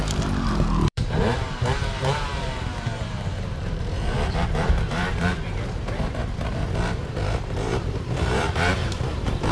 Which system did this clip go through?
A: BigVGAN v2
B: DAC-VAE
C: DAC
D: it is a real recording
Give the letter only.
A